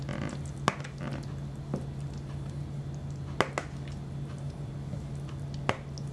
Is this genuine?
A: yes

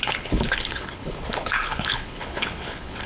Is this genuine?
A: no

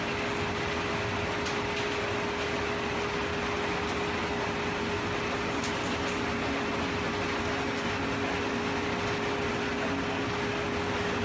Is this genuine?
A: yes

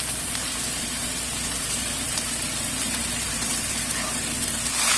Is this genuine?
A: no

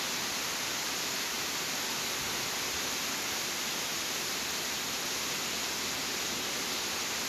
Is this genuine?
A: yes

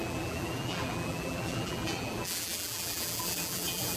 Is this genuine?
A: no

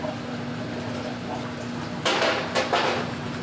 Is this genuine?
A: yes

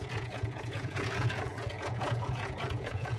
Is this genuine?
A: no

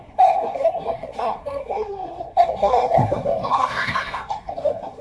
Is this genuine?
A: no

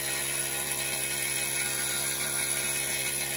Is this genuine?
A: yes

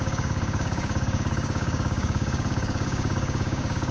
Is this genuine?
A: no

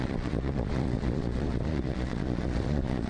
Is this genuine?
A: no